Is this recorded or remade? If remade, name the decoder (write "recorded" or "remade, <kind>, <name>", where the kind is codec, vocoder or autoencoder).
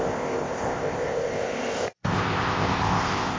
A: remade, codec, ZipCodec